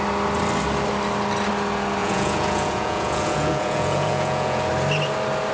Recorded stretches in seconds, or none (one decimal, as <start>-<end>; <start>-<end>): 0.0-2.0; 4.7-5.5